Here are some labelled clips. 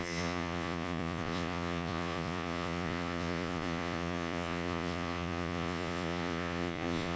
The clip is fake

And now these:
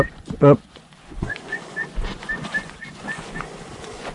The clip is fake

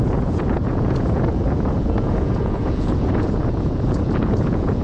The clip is fake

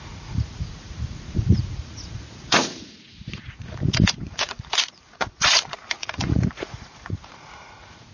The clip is fake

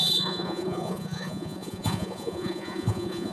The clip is fake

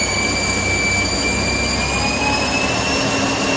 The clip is real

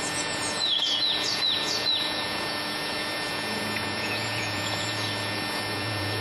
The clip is fake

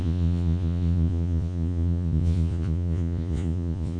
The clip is fake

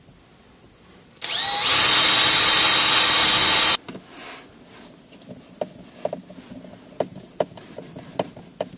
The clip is real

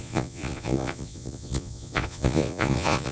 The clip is fake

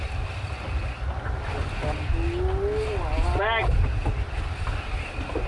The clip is real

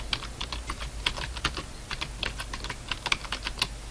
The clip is real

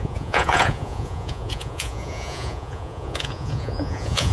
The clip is fake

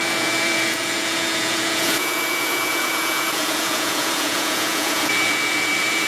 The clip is fake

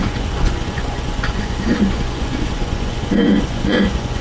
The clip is fake